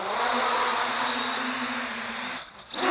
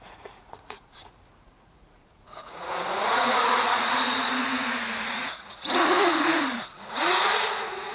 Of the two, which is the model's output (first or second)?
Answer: second